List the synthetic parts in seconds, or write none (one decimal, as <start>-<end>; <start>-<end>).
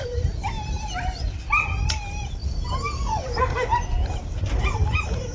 none